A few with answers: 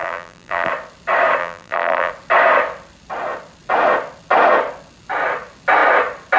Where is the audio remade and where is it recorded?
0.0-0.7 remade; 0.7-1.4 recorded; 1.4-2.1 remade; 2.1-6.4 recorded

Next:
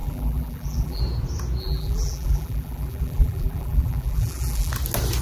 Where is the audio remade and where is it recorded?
0.0-1.0 remade; 1.0-1.6 recorded; 1.6-4.7 remade; 4.7-5.2 recorded

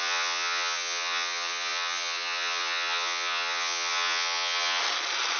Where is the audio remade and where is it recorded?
0.0-4.8 remade; 4.8-5.4 recorded